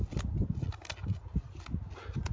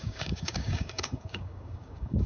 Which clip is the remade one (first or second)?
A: second